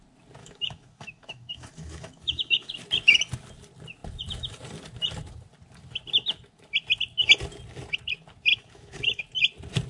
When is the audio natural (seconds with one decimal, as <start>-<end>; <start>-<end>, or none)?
0.0-0.4; 2.7-8.5; 9.2-9.9